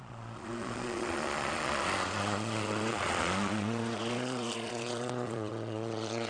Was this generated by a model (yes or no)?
yes